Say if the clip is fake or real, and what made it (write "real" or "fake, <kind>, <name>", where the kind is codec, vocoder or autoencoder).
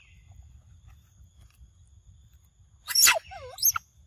real